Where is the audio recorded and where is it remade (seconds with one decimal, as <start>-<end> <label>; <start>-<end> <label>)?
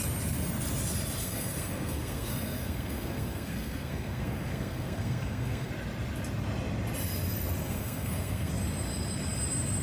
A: 0.0-1.2 recorded; 1.2-5.7 remade; 5.7-7.6 recorded; 7.6-8.5 remade; 8.5-9.8 recorded